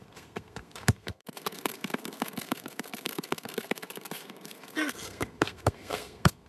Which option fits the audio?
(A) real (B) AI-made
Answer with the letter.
B